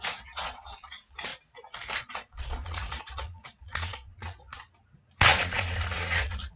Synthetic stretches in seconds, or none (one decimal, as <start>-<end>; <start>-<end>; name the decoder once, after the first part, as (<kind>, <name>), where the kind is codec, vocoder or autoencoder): 0.0-1.3 (vocoder, Vocos); 2.0-6.6